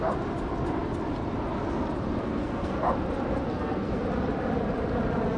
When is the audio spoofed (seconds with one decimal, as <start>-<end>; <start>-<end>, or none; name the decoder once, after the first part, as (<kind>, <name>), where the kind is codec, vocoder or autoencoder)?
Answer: 2.2-2.8 (codec, SNAC); 3.5-4.0